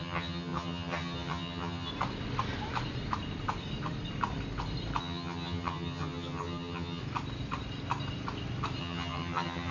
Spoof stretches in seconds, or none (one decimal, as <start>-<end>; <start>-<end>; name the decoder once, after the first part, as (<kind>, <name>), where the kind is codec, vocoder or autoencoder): 0.0-1.9 (vocoder, HiFi-GAN); 5.0-7.0; 8.8-9.7